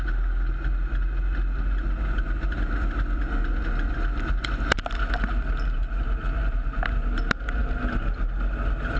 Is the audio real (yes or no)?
yes